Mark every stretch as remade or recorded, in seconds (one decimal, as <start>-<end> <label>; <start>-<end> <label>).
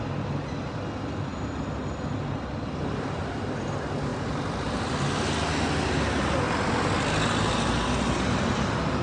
0.0-9.0 recorded